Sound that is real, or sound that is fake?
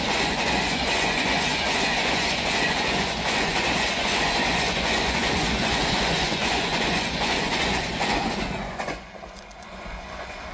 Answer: fake